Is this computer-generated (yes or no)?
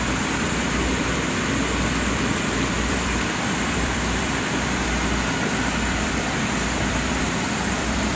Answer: yes